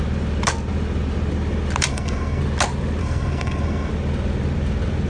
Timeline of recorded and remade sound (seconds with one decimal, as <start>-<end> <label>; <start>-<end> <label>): 0.0-1.9 recorded; 1.9-2.4 remade; 2.4-3.0 recorded; 3.0-3.9 remade; 3.9-5.1 recorded